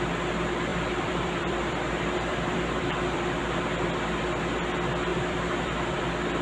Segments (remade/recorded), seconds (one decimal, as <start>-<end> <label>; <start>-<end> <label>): 0.0-0.7 recorded; 0.7-3.6 remade; 3.6-5.1 recorded; 5.1-6.0 remade; 6.0-6.4 recorded